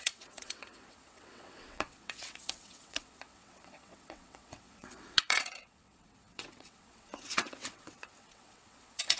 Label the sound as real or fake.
fake